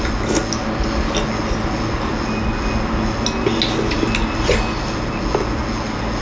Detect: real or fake real